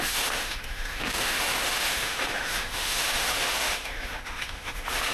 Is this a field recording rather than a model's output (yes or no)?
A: no